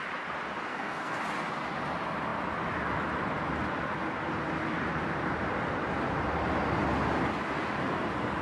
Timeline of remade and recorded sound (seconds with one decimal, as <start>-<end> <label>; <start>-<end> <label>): 0.0-0.7 recorded; 0.7-1.2 remade; 1.2-8.4 recorded